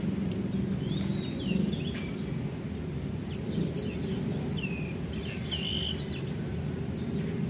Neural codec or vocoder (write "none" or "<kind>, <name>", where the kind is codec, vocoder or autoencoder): none